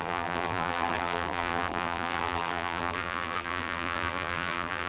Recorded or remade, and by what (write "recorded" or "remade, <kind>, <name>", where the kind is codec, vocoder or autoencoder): remade, vocoder, BigVGAN v2